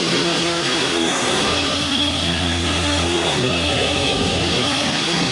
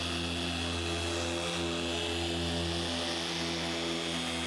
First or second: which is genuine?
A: second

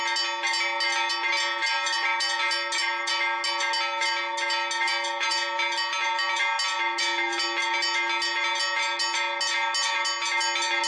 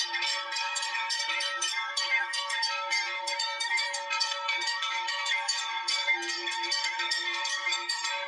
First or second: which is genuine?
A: first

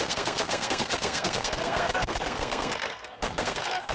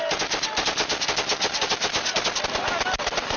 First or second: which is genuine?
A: second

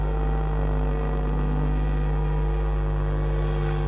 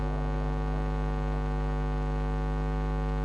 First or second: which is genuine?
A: second